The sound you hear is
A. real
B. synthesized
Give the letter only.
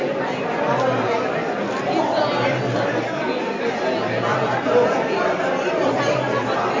A